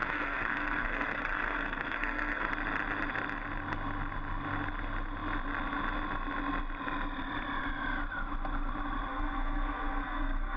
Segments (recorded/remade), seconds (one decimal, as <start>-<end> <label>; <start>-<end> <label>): 0.0-2.5 remade; 2.5-9.1 recorded; 9.1-10.6 remade